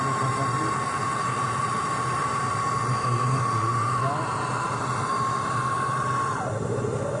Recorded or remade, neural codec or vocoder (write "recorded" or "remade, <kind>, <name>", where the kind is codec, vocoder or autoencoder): recorded